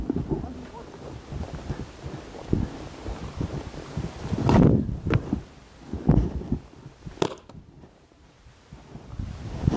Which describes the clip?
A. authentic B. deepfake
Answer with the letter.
A